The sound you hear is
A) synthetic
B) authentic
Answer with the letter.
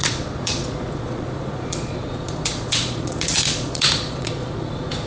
A